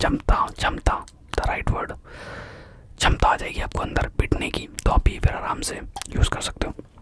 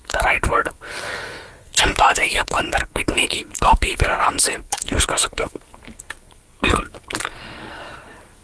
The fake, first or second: second